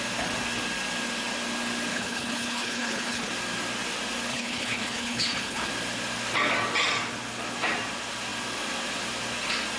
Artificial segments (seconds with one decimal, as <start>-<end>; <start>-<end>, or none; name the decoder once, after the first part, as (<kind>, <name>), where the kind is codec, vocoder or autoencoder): 1.9-3.3 (codec, HILCodec); 4.3-5.7